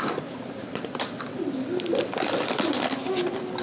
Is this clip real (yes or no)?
yes